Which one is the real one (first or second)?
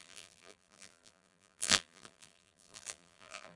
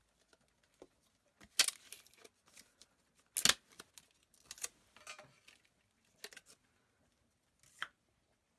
second